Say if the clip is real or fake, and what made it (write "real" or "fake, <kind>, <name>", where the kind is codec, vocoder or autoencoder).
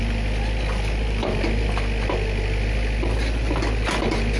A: real